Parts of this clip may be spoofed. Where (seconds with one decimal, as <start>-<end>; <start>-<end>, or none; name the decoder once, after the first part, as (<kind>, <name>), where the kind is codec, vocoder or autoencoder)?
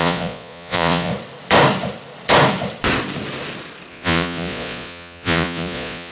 0.0-1.1 (vocoder, Vocos); 3.9-6.1